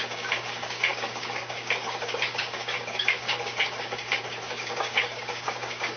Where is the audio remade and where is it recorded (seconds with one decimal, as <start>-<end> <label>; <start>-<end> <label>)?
0.0-6.0 remade